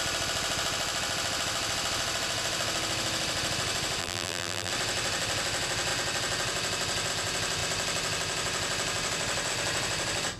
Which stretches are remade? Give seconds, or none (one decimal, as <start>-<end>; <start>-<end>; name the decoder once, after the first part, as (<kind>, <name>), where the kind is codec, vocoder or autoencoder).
4.0-4.7 (vocoder, BigVGAN v2)